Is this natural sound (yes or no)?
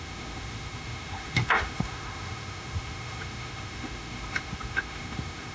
no